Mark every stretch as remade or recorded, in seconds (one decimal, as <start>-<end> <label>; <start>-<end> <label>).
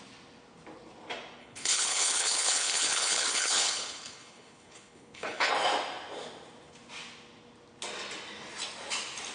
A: 0.0-1.4 recorded; 1.4-5.5 remade; 5.5-9.3 recorded